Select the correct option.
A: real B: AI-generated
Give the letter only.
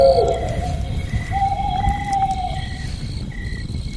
A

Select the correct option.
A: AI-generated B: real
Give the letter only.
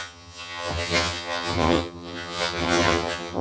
A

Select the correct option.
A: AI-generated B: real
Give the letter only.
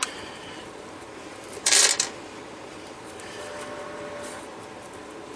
B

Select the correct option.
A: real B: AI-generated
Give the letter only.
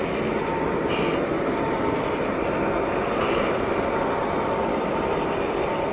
A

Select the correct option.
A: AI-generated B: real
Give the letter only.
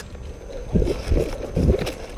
A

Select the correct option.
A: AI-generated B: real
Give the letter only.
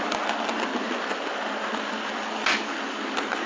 B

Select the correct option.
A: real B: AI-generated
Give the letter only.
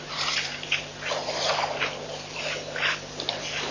B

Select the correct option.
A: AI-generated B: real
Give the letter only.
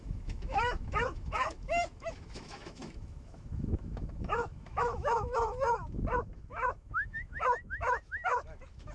A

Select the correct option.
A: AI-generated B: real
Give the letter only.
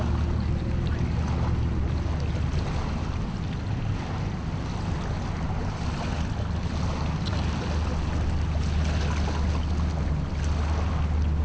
B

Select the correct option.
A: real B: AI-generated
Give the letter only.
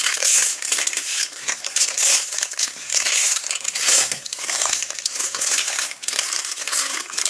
B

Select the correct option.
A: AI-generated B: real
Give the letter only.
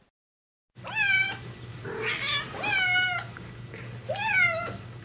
B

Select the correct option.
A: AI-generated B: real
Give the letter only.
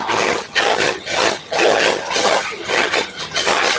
A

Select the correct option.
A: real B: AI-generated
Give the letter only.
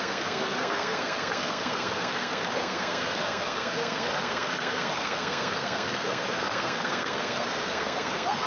B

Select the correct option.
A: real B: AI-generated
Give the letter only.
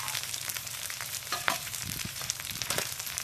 B